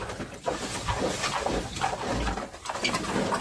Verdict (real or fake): real